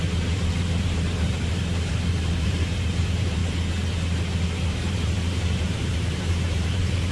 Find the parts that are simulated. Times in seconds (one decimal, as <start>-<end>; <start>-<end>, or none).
0.0-3.4; 4.7-7.1